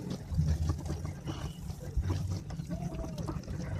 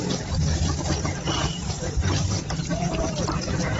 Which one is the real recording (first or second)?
first